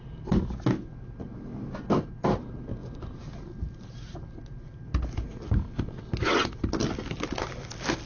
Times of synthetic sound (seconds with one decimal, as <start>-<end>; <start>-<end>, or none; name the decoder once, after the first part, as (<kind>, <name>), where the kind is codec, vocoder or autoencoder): none

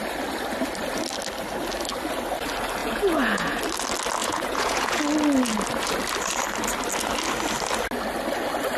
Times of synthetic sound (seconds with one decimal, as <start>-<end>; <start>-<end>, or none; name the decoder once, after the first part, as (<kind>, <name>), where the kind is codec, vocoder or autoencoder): 2.8-3.6 (vocoder, Vocos); 4.2-5.0

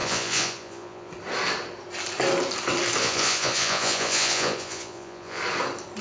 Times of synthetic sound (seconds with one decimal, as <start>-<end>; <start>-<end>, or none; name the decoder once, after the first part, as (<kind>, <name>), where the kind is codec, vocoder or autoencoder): 0.0-1.1 (vocoder, Vocos); 3.0-5.4

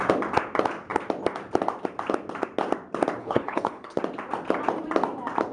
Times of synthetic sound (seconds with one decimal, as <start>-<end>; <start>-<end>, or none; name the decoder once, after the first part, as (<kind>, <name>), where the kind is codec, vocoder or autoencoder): 3.2-4.0 (codec, HILCodec)

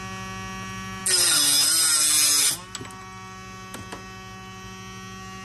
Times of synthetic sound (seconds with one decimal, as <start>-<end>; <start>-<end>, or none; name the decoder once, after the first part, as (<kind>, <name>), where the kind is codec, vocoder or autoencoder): none

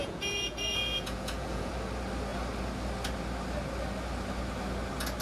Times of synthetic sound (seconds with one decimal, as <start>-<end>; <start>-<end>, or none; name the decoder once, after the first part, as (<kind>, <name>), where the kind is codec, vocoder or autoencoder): 0.0-1.7 (vocoder, Vocos)